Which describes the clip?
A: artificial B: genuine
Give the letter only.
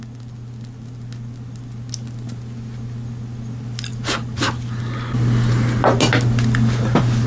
B